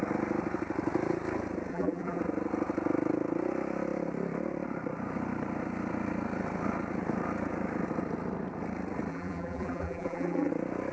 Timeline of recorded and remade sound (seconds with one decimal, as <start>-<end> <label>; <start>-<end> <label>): 0.0-1.7 recorded; 1.7-2.2 remade; 2.2-9.1 recorded; 9.1-10.5 remade; 10.5-10.9 recorded